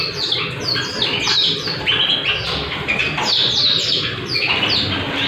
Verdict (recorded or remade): recorded